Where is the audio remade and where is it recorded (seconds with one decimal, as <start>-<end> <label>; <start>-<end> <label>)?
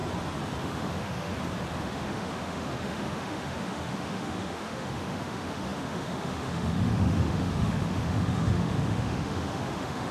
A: 0.0-0.6 recorded; 0.6-1.3 remade; 1.3-1.8 recorded; 1.8-10.1 remade